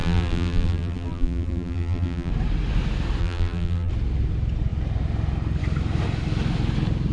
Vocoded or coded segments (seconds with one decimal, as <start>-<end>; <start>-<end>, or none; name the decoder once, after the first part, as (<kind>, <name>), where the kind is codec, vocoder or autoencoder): 0.0-2.3 (vocoder, BigVGAN v2); 3.2-3.9